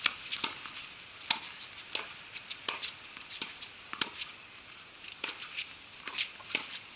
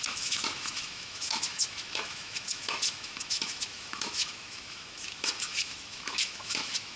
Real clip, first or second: first